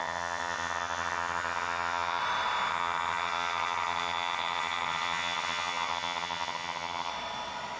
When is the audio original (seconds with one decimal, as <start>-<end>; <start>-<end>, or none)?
2.2-2.7; 7.1-7.8

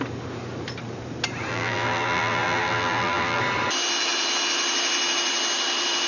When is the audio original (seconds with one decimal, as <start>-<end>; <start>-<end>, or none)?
0.0-1.5; 3.4-6.1

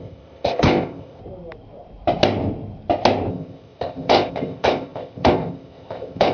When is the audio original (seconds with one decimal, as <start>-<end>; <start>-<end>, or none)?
1.2-3.3

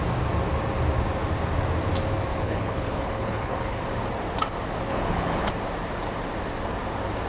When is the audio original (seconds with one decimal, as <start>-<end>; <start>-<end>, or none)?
0.0-2.3; 3.8-4.9; 5.5-7.3

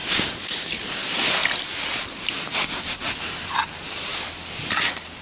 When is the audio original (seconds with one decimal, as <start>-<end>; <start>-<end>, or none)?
1.0-3.2; 4.1-5.2

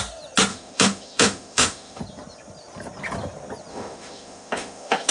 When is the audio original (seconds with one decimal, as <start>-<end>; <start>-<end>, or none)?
0.0-0.5; 2.0-3.7

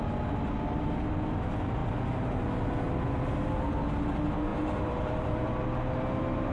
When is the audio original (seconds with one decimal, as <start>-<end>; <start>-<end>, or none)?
0.0-4.5; 5.6-6.5